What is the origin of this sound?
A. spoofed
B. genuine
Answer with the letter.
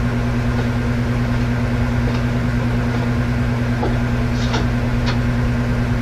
B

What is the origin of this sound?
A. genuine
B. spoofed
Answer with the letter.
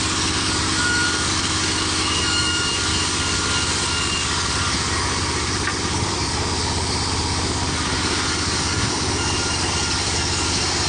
B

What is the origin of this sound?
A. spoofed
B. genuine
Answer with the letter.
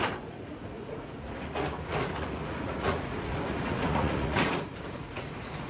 A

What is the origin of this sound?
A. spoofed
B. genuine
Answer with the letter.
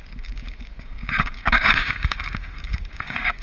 A